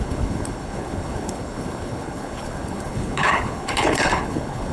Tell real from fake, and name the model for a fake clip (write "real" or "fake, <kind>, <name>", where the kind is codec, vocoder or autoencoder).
fake, codec, HILCodec